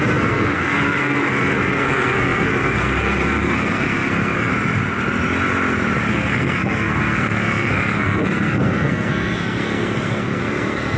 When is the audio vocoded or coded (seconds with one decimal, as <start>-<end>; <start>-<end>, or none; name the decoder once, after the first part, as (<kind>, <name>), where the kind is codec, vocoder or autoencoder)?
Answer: 0.0-4.5 (codec, SNAC); 6.1-11.0

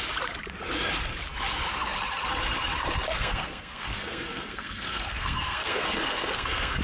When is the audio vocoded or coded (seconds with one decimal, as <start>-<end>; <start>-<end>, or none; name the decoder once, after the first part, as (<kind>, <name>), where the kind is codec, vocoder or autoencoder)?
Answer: 3.1-6.8 (codec, SNAC)

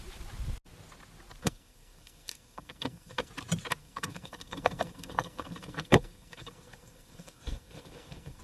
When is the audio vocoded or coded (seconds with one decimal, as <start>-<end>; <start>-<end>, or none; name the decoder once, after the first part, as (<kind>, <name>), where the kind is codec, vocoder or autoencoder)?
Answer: 1.4-3.3 (codec, SNAC); 3.8-8.4

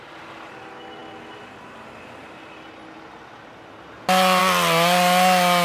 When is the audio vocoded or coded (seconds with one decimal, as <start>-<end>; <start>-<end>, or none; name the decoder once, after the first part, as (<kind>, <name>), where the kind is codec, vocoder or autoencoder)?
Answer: none

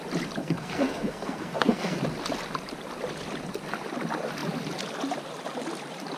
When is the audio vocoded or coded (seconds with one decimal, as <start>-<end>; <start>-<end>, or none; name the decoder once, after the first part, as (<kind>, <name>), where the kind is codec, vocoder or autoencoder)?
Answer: 0.4-2.0 (codec, SNAC)

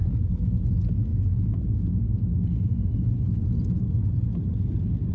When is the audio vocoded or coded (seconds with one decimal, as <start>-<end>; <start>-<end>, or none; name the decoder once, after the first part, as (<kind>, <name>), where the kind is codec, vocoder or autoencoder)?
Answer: none

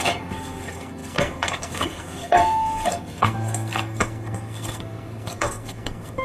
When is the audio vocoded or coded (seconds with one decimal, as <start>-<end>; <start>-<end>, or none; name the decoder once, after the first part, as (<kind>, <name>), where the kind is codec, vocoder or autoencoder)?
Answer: 0.0-6.2 (codec, SNAC)